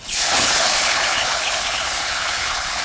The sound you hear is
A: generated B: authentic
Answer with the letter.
A